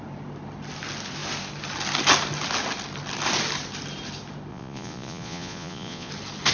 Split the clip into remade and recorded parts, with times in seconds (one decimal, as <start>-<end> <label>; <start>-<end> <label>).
0.0-4.5 recorded; 4.5-6.1 remade; 6.1-6.5 recorded